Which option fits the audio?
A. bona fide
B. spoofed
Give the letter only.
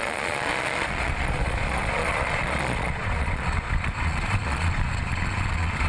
B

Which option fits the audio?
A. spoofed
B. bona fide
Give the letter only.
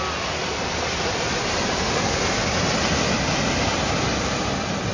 B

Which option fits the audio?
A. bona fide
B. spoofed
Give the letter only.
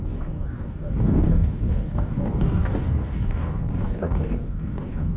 B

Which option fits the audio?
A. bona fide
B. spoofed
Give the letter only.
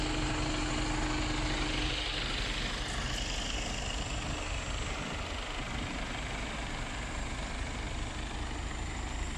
A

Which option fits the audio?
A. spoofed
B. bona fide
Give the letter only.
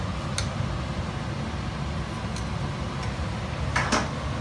B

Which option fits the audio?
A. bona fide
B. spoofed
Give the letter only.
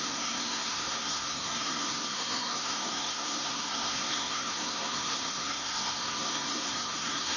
B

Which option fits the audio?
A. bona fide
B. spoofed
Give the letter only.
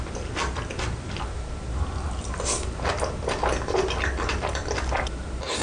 A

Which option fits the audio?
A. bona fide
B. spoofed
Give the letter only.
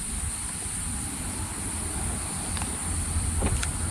A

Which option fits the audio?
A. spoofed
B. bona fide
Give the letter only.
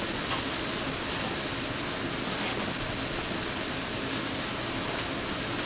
B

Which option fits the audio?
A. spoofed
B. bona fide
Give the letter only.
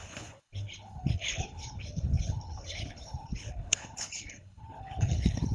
A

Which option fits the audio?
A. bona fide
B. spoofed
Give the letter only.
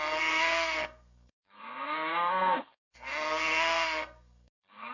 B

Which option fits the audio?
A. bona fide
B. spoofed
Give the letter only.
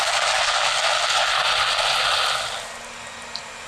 A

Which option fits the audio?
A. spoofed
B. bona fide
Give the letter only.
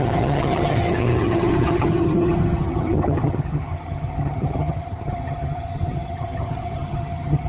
A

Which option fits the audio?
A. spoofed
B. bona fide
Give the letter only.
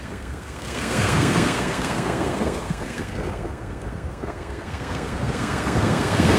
A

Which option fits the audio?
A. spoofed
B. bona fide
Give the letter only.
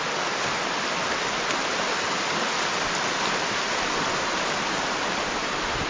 B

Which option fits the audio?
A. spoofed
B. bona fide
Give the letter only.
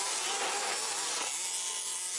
B